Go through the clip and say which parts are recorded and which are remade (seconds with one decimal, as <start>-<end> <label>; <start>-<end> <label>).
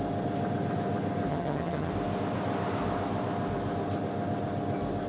0.0-1.3 recorded; 1.3-1.9 remade; 1.9-5.1 recorded